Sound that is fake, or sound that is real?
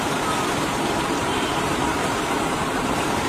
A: fake